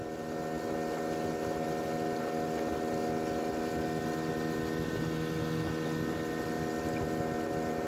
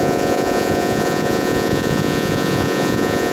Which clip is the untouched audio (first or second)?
first